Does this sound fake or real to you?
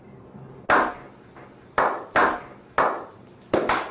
real